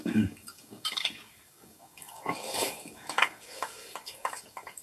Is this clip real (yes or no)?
no